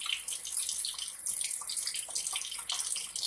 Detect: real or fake real